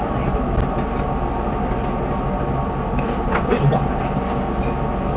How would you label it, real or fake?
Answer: real